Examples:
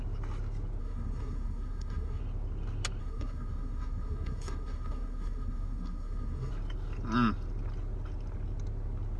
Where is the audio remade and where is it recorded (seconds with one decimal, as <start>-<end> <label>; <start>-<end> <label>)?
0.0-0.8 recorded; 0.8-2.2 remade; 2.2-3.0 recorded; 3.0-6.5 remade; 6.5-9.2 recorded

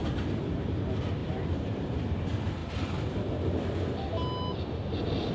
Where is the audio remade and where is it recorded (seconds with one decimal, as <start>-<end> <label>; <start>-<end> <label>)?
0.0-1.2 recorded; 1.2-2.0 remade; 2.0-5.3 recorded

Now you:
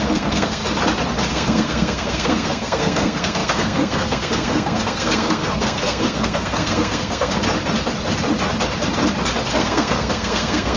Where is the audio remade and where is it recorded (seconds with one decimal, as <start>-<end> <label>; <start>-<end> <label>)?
0.0-0.6 remade; 0.6-1.3 recorded; 1.3-7.4 remade; 7.4-9.5 recorded; 9.5-10.8 remade

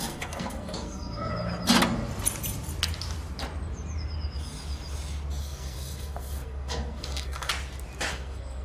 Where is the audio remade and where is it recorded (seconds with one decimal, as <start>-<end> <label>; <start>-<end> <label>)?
0.0-1.3 remade; 1.3-5.4 recorded; 5.4-7.5 remade; 7.5-8.1 recorded; 8.1-8.6 remade

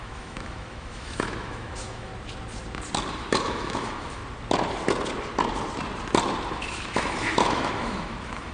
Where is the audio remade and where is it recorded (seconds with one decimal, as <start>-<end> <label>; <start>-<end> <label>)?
0.0-2.1 remade; 2.1-3.1 recorded; 3.1-4.2 remade; 4.2-6.6 recorded; 6.6-8.5 remade

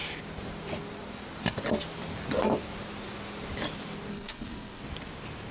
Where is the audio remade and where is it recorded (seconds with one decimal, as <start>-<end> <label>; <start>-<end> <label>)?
0.0-4.1 recorded; 4.1-4.8 remade; 4.8-5.5 recorded

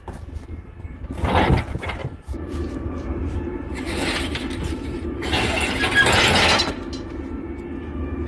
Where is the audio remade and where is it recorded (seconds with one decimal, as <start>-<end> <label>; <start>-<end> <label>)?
0.0-2.0 recorded; 2.0-5.5 remade; 5.5-8.3 recorded